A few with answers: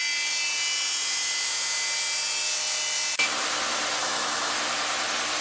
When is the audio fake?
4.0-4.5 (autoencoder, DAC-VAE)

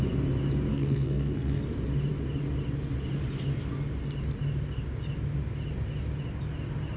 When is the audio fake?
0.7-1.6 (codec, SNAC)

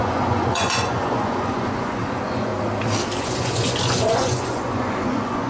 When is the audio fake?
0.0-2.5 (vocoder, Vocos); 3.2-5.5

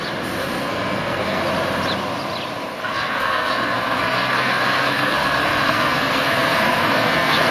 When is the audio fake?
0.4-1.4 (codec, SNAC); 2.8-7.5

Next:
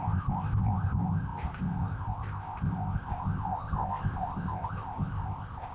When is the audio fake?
0.0-5.7 (codec, ZipCodec)

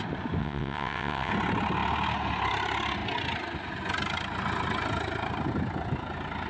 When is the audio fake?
0.4-1.3 (vocoder, WaveNeXt)

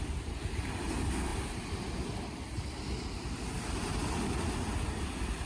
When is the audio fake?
none

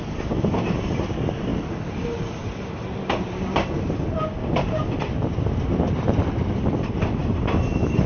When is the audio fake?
none